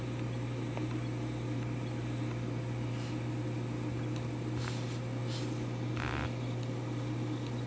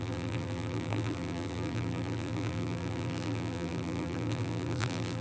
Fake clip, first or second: second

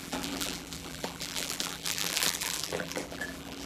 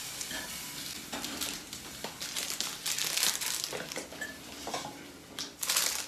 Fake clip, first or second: first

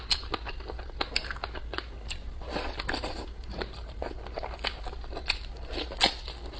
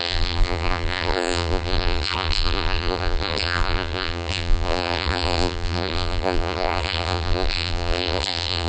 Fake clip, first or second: second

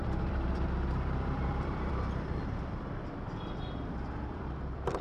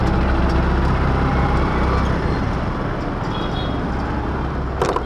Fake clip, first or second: first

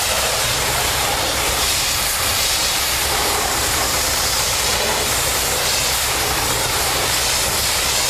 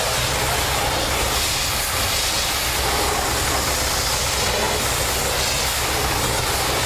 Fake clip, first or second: first